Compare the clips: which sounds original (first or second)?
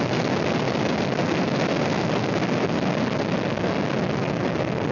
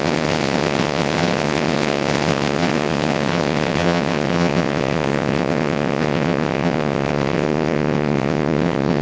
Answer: first